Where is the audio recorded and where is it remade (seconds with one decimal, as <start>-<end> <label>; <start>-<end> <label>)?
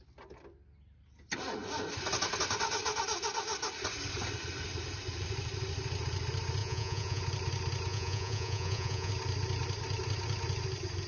0.0-6.6 recorded; 6.6-7.2 remade; 7.2-7.9 recorded; 7.9-9.1 remade; 9.1-11.1 recorded